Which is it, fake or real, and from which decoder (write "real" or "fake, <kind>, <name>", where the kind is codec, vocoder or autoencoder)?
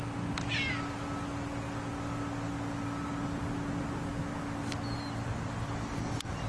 real